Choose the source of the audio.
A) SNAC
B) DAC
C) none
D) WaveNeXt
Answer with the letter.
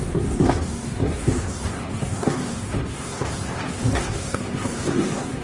A